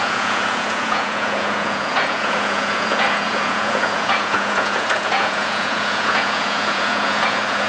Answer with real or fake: fake